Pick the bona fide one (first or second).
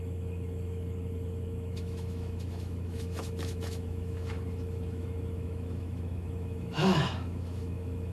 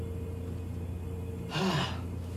second